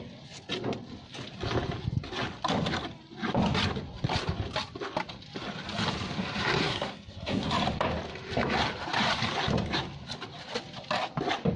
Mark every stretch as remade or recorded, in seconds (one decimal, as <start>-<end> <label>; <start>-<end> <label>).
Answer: 0.0-6.6 recorded; 6.6-7.5 remade; 7.5-11.6 recorded